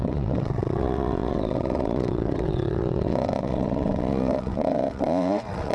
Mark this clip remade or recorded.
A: remade